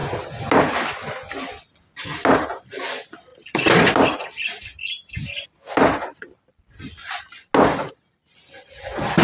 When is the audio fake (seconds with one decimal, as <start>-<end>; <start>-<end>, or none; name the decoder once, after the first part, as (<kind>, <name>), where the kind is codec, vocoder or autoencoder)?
none